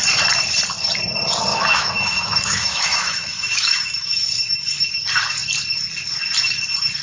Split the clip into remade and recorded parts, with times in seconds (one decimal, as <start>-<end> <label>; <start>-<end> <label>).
0.0-1.5 recorded; 1.5-4.9 remade; 4.9-7.0 recorded